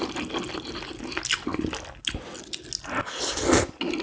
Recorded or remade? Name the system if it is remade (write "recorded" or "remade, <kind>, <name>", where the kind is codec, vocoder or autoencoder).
recorded